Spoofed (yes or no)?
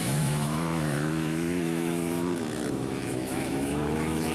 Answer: yes